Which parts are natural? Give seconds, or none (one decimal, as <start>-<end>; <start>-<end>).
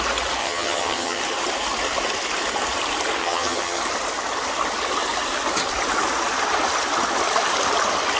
0.0-0.4; 1.2-3.2; 3.8-8.2